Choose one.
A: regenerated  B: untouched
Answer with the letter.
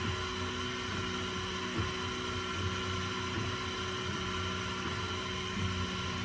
B